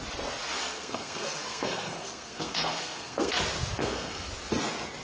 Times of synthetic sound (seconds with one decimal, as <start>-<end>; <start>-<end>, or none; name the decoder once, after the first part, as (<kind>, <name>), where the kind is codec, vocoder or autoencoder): 0.6-3.4 (codec, SNAC); 3.8-4.3